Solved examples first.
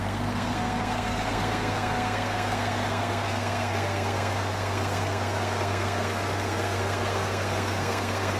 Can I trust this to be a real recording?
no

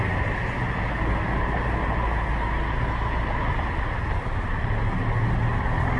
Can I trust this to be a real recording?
yes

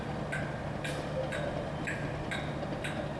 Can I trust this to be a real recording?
yes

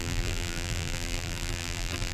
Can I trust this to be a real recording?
no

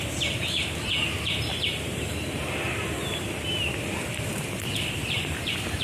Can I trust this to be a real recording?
no